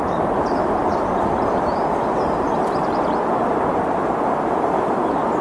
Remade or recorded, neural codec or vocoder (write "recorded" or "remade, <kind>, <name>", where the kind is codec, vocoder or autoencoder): remade, vocoder, BigVGAN v2